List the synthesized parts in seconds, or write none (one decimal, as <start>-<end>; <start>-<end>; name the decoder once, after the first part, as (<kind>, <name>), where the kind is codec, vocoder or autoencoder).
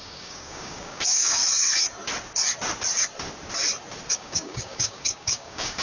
0.0-1.4 (codec, DAC); 4.1-5.8